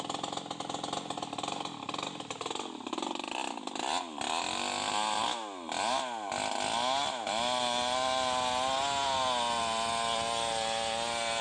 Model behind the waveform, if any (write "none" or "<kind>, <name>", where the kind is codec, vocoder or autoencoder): none